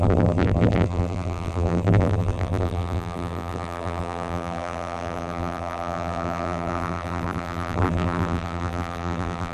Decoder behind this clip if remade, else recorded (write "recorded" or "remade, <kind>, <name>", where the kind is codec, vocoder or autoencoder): remade, vocoder, BigVGAN v2